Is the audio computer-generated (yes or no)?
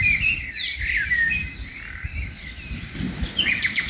yes